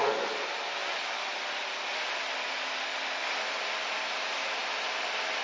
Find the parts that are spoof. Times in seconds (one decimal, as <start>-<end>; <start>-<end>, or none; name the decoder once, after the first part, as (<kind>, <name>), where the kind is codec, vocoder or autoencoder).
0.8-1.8 (vocoder, BigVGAN v2)